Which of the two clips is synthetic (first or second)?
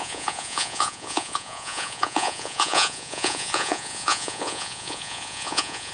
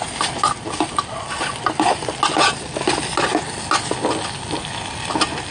first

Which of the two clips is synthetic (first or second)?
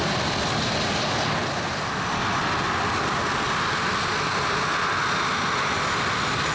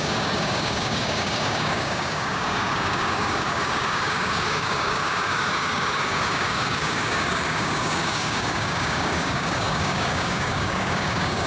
second